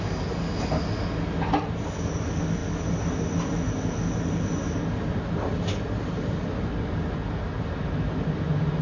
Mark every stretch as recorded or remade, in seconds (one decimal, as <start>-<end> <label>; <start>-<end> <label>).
0.0-8.8 recorded